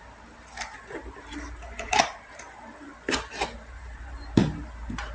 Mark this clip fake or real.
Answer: fake